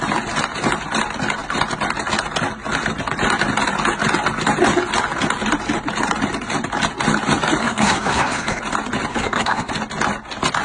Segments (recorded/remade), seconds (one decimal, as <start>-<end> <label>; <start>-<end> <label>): 0.0-7.6 recorded; 7.6-8.6 remade; 8.6-9.1 recorded; 9.1-9.7 remade; 9.7-10.6 recorded